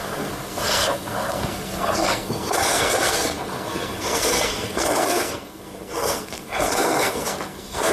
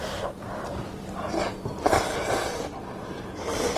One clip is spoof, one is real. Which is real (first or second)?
second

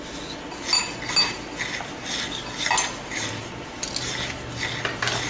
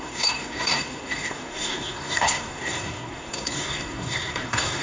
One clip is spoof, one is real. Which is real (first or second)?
first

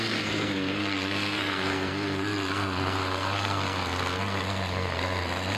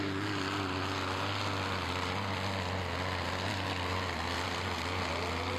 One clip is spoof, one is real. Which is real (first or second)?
second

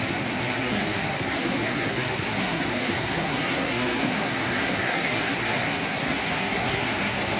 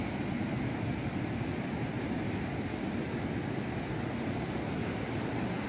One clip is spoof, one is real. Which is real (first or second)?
second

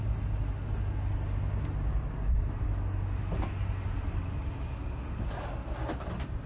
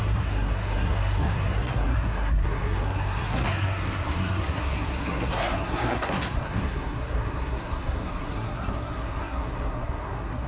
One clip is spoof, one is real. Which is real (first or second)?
first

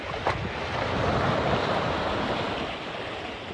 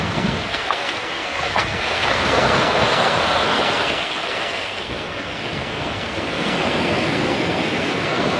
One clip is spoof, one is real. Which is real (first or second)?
first